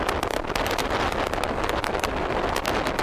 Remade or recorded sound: recorded